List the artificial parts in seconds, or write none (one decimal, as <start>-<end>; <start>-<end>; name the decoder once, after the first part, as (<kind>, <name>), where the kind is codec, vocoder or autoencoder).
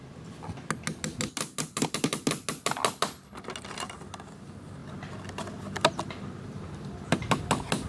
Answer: none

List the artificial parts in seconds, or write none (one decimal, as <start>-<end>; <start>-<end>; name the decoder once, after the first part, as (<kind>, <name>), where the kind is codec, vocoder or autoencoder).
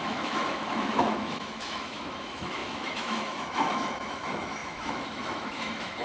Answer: 0.0-6.0 (autoencoder, DAC-VAE)